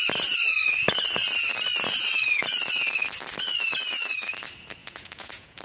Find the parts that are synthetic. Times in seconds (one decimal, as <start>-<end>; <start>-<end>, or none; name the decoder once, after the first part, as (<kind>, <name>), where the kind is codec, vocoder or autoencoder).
4.8-5.6 (vocoder, Vocos)